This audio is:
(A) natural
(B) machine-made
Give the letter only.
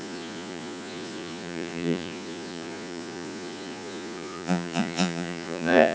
B